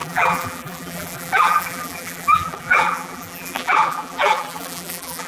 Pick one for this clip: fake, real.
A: fake